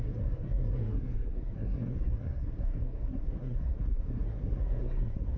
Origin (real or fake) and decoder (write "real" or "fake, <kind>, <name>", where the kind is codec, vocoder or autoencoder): fake, codec, SNAC